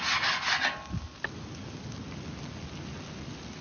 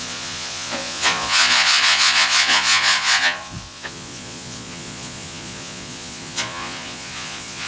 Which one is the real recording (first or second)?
first